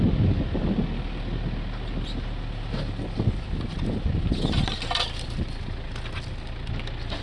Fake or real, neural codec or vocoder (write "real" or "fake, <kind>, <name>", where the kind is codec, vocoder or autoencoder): real